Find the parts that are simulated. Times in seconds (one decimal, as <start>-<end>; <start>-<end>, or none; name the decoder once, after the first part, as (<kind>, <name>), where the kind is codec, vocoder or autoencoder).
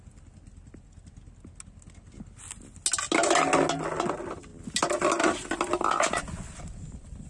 none